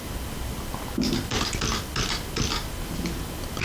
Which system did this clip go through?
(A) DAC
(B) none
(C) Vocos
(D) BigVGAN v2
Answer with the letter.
B